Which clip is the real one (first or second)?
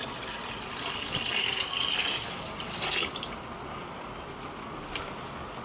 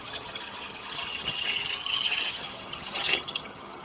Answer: first